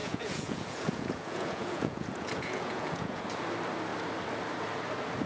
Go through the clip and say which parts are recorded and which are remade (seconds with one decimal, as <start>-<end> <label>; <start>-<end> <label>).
0.0-3.2 remade; 3.2-5.3 recorded